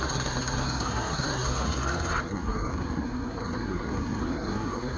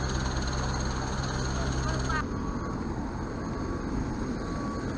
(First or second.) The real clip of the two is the second